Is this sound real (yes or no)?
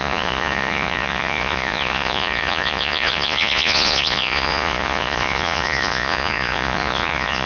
no